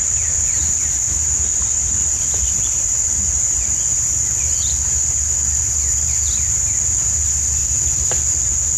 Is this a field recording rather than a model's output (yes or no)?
yes